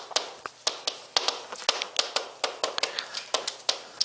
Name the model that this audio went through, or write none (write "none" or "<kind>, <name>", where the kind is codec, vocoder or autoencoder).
none